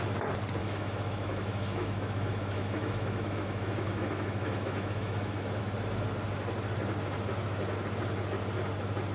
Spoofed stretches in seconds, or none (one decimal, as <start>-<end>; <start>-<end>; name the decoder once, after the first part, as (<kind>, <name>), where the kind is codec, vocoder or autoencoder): 0.6-5.6 (autoencoder, DAC-VAE)